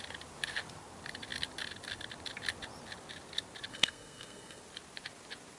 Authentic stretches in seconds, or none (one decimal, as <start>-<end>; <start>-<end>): 0.0-3.7; 4.6-5.6